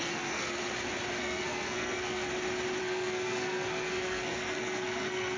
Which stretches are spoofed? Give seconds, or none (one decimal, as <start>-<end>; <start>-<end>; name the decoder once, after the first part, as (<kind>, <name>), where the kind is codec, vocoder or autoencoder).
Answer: 0.0-0.6 (codec, SNAC); 1.2-2.3; 2.8-5.4